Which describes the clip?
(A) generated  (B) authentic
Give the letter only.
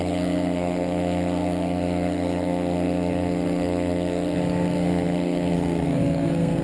A